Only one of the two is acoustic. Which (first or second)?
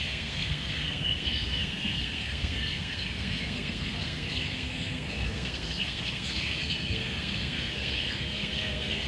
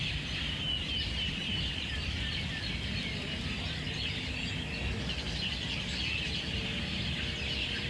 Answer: second